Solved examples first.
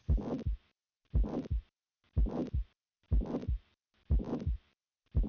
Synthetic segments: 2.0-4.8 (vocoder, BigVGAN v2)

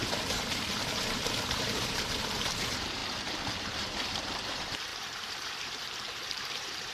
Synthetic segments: 0.0-3.0 (vocoder, BigVGAN v2); 3.6-6.9

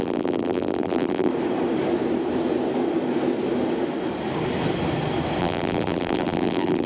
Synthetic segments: 0.0-1.3 (vocoder, BigVGAN v2); 5.4-6.9

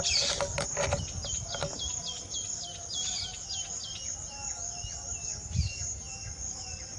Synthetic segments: none

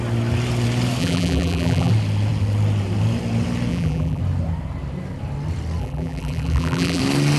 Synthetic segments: 1.0-1.9 (vocoder, BigVGAN v2); 3.7-4.2; 5.8-7.0